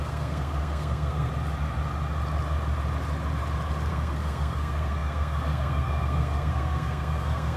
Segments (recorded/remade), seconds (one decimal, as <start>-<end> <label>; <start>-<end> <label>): 0.0-1.3 remade; 1.3-3.9 recorded; 3.9-7.6 remade